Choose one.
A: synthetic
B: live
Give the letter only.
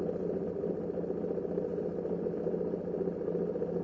B